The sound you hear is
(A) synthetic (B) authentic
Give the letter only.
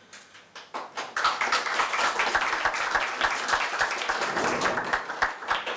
B